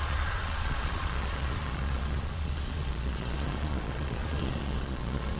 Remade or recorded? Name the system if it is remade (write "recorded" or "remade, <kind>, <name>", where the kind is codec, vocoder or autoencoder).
remade, vocoder, Vocos